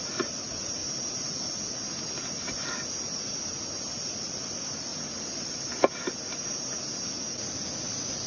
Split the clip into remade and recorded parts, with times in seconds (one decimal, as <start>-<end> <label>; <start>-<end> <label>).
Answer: 0.0-0.8 remade; 0.8-4.1 recorded; 4.1-4.9 remade; 4.9-7.8 recorded; 7.8-8.3 remade

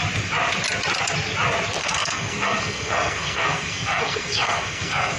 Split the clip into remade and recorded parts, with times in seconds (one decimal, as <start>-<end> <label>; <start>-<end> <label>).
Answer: 0.0-1.8 recorded; 1.8-5.2 remade